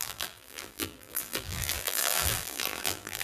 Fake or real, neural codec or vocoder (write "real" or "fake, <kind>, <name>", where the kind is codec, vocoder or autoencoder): fake, vocoder, BigVGAN v2